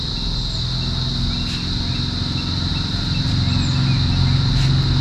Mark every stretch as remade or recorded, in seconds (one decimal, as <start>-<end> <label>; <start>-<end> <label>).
0.0-2.7 recorded; 2.7-3.3 remade; 3.3-5.0 recorded

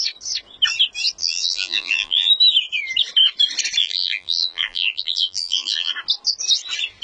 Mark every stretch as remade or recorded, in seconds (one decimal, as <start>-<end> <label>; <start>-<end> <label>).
0.0-1.2 recorded; 1.2-2.3 remade; 2.3-3.8 recorded; 3.8-5.9 remade; 5.9-7.0 recorded

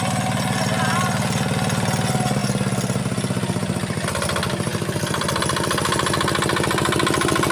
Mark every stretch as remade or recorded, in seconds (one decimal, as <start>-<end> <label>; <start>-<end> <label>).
0.0-4.7 recorded; 4.7-5.4 remade; 5.4-7.5 recorded